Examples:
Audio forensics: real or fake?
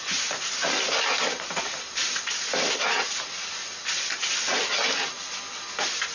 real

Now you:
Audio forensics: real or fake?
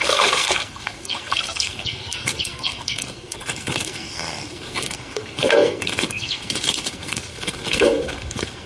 fake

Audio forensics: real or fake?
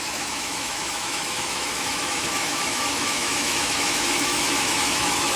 fake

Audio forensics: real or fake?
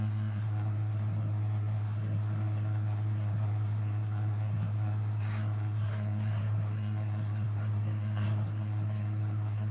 fake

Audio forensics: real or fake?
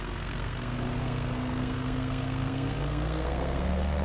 fake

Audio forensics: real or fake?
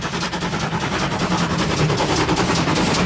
real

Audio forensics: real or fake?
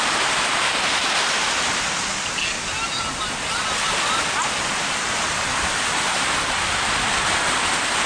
real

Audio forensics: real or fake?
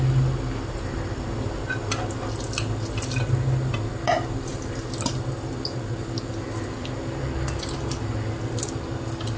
real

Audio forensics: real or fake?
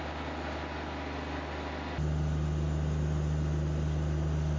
real